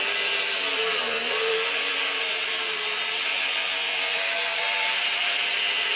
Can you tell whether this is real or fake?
fake